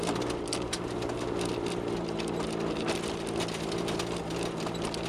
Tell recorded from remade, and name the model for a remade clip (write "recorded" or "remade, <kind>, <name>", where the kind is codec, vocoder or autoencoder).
recorded